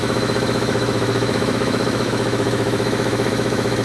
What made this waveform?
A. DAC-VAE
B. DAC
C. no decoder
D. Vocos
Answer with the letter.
A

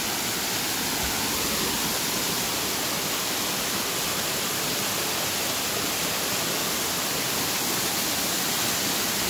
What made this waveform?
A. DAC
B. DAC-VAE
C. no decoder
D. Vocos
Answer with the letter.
C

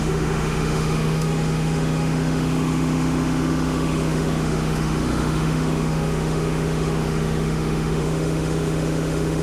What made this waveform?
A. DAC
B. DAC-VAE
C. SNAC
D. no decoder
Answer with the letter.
B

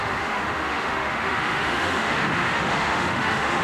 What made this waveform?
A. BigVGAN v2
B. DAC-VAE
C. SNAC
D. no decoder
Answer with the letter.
B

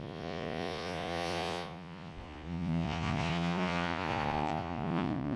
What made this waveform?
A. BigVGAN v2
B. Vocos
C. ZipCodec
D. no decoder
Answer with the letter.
B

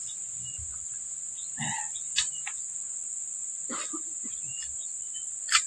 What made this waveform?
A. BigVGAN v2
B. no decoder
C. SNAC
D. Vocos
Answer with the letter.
B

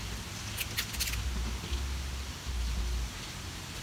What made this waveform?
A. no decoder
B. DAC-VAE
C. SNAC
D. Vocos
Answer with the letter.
A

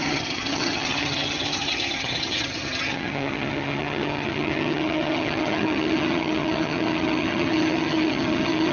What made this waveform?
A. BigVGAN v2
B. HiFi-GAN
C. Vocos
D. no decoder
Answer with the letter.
B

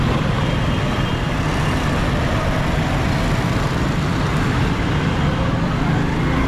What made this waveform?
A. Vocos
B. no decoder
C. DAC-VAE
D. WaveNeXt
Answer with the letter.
B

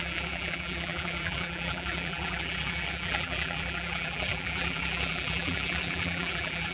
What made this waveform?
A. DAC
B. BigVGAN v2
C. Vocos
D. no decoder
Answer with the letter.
B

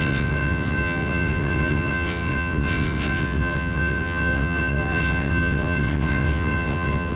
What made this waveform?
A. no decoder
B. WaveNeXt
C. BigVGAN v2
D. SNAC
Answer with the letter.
B